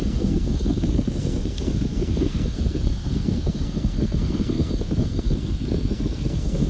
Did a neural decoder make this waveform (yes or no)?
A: yes